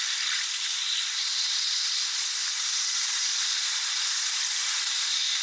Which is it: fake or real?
real